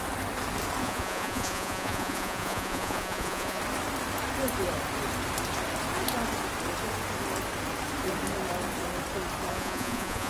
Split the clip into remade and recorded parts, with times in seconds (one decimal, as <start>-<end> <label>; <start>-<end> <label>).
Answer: 0.0-0.8 recorded; 0.8-3.6 remade; 3.6-9.5 recorded; 9.5-10.3 remade